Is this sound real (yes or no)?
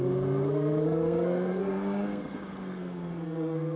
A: no